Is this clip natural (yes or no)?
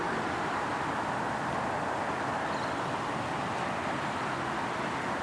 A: yes